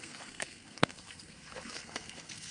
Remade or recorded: remade